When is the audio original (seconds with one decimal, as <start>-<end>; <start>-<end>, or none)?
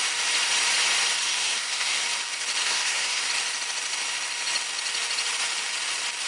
0.0-1.2; 2.0-2.6; 3.3-6.3